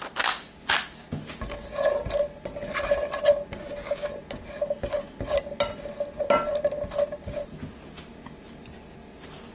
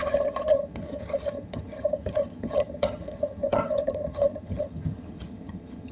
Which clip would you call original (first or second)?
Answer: first